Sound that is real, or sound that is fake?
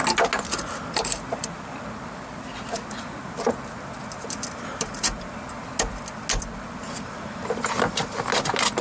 real